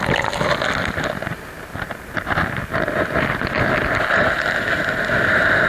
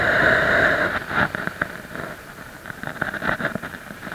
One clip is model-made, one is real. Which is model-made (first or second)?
second